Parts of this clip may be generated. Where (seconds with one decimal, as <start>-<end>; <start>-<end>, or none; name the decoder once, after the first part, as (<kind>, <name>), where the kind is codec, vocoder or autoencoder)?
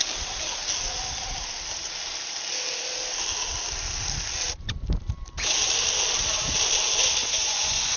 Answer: 7.2-8.0 (vocoder, Vocos)